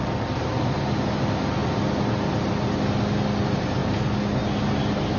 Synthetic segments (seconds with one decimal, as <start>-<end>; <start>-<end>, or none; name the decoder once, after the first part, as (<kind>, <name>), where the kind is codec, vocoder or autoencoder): none